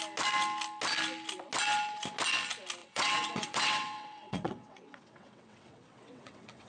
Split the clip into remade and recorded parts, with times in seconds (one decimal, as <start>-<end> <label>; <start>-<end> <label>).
0.0-2.8 recorded; 2.8-6.7 remade

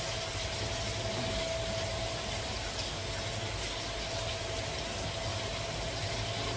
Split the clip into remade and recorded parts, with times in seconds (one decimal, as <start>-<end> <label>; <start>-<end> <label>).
0.0-5.3 recorded; 5.3-6.1 remade; 6.1-6.6 recorded

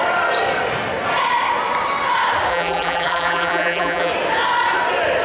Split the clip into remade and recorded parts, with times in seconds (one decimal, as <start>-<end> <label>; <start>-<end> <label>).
0.0-2.5 recorded; 2.5-4.1 remade; 4.1-5.2 recorded

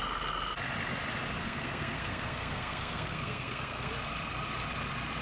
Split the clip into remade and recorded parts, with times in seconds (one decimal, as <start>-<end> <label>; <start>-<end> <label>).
0.0-1.4 recorded; 1.4-3.9 remade; 3.9-5.2 recorded

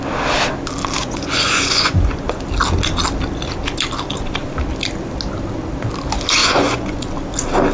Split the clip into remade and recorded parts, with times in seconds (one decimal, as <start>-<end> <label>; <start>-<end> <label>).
0.0-1.0 recorded; 1.0-2.4 remade; 2.4-6.4 recorded; 6.4-7.1 remade; 7.1-7.7 recorded

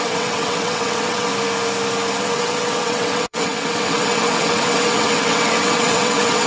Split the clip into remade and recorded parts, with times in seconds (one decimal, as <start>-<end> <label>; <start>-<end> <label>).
0.0-1.3 remade; 1.3-2.2 recorded; 2.2-6.5 remade

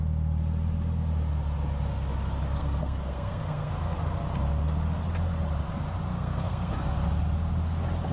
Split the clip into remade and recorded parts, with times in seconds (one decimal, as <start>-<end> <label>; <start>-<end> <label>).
0.0-2.6 recorded; 2.6-3.7 remade; 3.7-6.1 recorded; 6.1-6.7 remade; 6.7-8.1 recorded